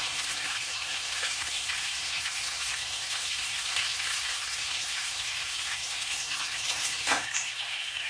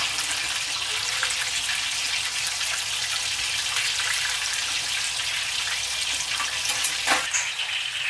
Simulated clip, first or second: first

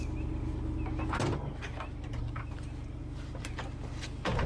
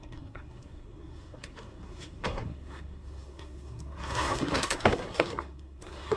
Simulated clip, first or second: second